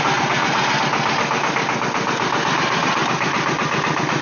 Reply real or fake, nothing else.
real